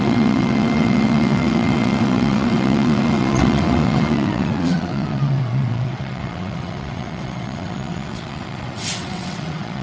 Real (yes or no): no